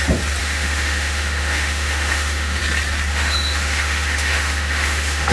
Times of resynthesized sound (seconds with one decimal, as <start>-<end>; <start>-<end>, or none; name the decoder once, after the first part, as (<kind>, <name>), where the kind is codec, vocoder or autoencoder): 0.4-2.6 (autoencoder, DAC-VAE); 3.1-5.3